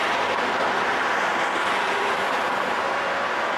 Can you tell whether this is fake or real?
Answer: real